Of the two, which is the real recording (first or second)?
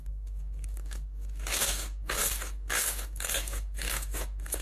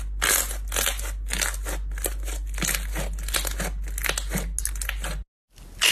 second